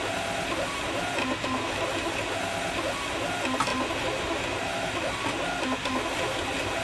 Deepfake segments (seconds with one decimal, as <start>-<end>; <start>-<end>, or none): none